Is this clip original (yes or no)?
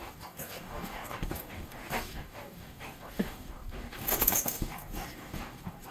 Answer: no